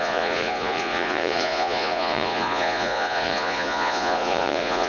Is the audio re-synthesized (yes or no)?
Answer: yes